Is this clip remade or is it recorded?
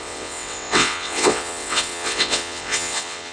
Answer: remade